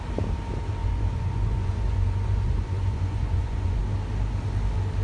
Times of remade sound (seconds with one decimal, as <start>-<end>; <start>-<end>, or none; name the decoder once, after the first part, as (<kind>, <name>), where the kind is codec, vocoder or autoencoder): 0.8-3.8 (vocoder, Vocos)